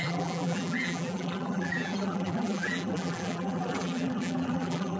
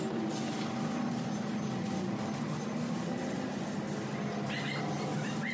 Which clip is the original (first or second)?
second